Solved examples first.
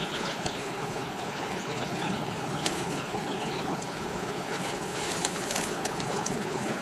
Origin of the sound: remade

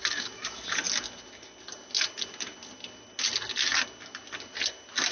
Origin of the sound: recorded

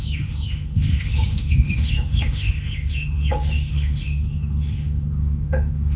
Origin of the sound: remade